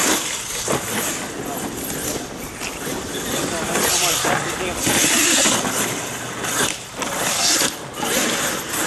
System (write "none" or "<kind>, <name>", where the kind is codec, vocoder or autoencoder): none